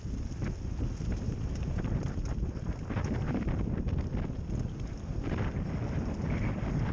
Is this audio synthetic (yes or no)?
no